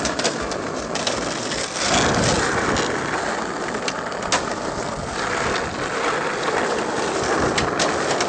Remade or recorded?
recorded